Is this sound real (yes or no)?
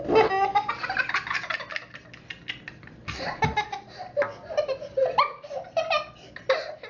yes